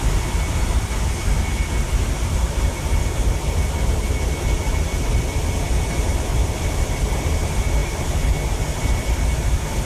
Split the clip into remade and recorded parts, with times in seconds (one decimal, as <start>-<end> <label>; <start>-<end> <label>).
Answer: 0.0-9.9 recorded